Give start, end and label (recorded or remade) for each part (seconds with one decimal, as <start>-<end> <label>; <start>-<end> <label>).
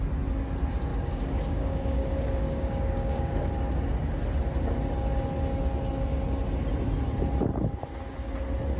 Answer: 0.0-0.9 recorded; 0.9-3.5 remade; 3.5-8.8 recorded